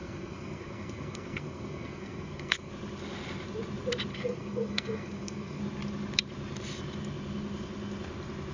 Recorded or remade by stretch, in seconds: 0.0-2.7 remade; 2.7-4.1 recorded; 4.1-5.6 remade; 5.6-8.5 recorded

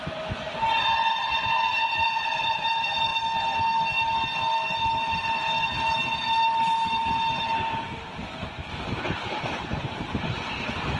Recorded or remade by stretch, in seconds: 0.0-11.0 recorded

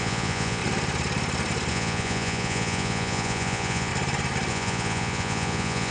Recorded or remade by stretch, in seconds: 0.0-0.6 remade; 0.6-1.7 recorded; 1.7-3.9 remade; 3.9-4.5 recorded; 4.5-5.9 remade

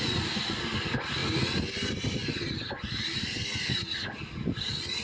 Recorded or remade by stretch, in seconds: 0.0-5.0 recorded

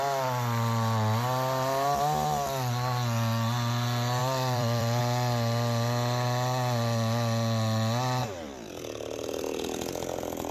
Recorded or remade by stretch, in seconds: 0.0-4.2 recorded; 4.2-5.0 remade; 5.0-8.2 recorded; 8.2-8.7 remade; 8.7-10.5 recorded

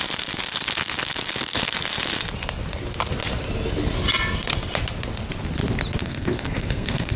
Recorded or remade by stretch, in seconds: 0.0-6.0 recorded; 6.0-7.2 remade

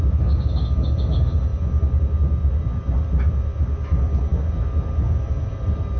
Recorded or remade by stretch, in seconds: 0.0-6.0 recorded

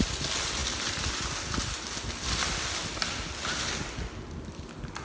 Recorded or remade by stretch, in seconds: 0.0-5.0 recorded